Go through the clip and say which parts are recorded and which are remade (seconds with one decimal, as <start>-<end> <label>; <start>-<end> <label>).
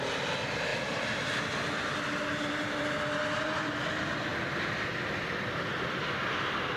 0.0-6.8 recorded